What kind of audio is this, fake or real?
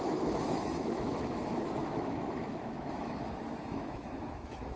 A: fake